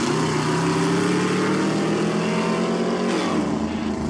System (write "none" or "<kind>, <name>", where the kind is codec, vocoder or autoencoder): none